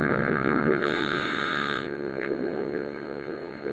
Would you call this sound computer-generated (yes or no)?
yes